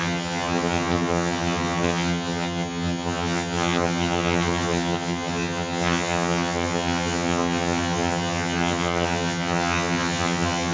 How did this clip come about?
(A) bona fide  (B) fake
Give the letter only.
B